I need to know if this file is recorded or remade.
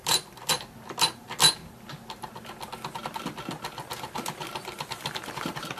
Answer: recorded